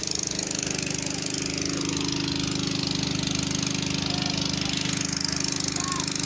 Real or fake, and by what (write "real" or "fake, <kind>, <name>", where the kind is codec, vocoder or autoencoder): real